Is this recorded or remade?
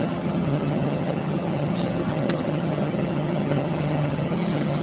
remade